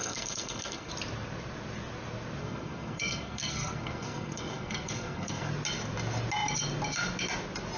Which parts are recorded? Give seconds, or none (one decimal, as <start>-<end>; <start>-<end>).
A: 0.9-2.4; 5.5-7.8